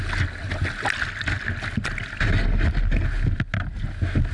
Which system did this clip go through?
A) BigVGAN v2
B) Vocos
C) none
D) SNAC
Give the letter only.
C